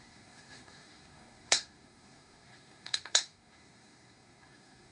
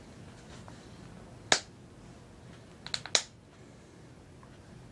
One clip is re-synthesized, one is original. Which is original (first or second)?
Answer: second